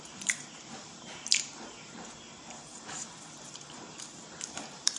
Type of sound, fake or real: fake